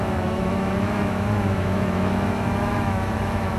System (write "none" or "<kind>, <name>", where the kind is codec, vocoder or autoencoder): autoencoder, DAC-VAE